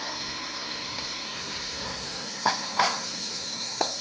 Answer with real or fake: fake